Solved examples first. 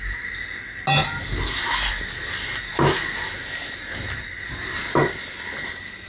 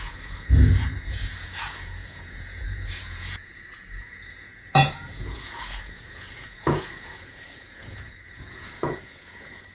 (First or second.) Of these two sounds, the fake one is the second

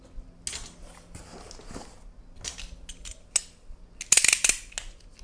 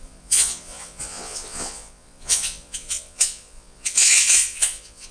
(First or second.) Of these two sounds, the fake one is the second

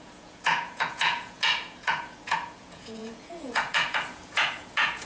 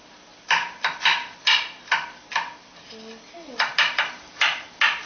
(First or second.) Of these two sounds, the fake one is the first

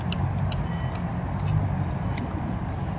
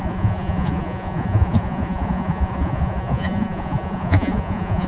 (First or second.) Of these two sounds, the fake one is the second